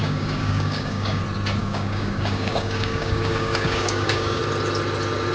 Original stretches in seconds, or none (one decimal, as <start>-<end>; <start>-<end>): 1.2-1.6; 4.4-5.3